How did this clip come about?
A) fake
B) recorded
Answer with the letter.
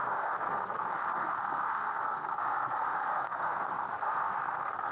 A